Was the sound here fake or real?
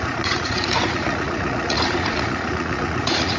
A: fake